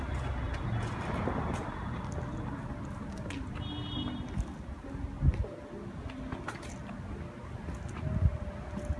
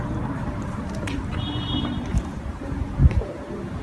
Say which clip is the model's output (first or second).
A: second